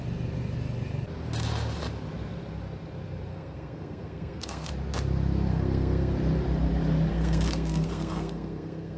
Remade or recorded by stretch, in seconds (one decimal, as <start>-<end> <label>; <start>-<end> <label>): 0.0-3.3 recorded; 3.3-4.7 remade; 4.7-5.5 recorded; 5.5-6.1 remade; 6.1-7.1 recorded; 7.1-9.0 remade